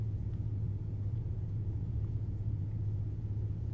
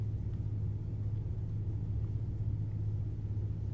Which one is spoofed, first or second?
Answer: first